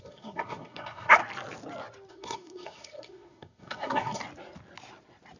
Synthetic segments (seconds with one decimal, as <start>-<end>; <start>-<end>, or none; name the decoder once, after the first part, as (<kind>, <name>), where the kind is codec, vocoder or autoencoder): 0.0-1.2 (codec, SNAC); 2.1-4.2